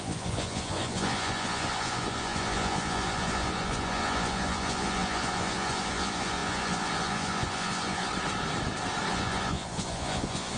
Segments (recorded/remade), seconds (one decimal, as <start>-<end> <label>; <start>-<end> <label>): 0.0-8.1 remade; 8.1-9.1 recorded; 9.1-10.6 remade